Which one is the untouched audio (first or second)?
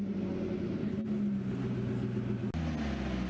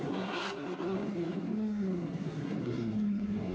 first